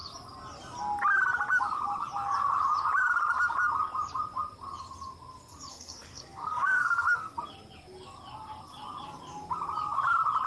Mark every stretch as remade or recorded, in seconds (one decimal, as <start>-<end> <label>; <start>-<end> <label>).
0.0-5.7 recorded; 5.7-7.4 remade; 7.4-10.5 recorded